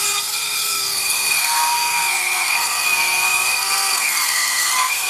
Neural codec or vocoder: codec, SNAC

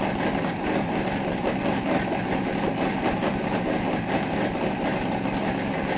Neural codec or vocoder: none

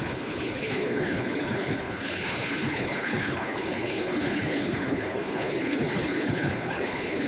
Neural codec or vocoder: codec, HILCodec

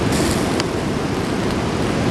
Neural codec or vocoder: none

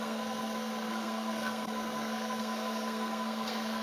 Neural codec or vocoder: codec, SNAC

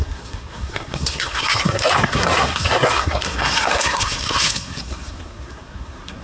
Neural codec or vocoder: codec, SNAC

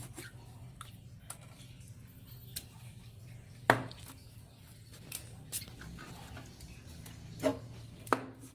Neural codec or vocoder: none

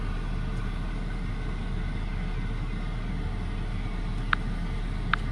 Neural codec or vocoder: none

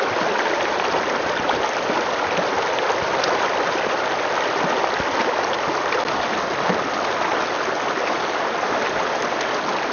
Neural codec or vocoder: none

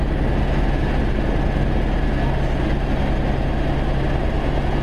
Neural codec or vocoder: none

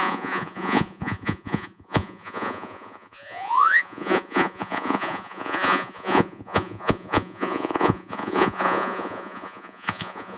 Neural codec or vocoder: vocoder, Vocos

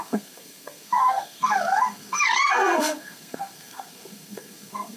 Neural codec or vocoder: codec, SNAC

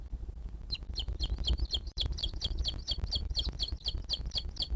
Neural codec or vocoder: vocoder, BigVGAN v2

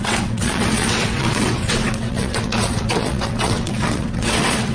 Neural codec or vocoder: vocoder, WaveNeXt